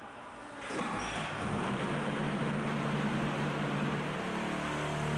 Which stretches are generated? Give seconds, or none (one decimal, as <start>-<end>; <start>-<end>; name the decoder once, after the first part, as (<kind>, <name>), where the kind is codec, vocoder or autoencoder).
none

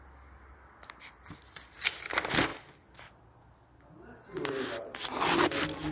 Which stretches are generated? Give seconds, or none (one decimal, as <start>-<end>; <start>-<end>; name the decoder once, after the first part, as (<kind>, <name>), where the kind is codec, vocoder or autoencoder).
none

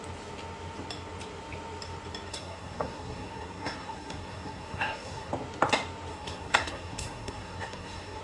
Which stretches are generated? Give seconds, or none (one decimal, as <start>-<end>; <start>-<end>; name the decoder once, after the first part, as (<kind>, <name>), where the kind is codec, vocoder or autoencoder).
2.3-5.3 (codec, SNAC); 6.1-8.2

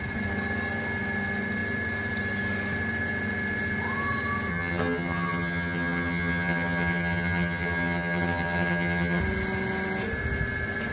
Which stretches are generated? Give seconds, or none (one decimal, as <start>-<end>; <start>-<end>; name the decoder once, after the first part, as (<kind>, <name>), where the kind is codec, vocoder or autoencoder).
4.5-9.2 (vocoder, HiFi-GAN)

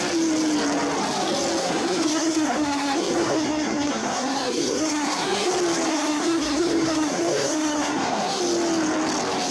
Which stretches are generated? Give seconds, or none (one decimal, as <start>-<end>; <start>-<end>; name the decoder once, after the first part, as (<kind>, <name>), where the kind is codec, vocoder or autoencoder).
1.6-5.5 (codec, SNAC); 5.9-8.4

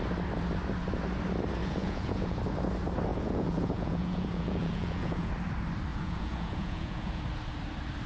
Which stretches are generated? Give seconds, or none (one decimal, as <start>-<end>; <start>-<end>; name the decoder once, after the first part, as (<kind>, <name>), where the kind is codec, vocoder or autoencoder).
1.6-2.4 (vocoder, Vocos); 3.1-5.3; 5.9-7.2

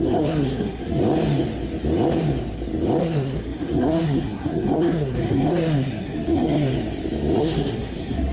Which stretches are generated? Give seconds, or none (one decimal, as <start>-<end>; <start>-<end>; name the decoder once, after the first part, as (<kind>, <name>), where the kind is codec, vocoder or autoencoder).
0.0-1.0 (codec, SNAC); 3.0-6.7; 7.4-8.3